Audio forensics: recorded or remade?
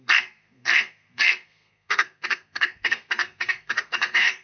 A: remade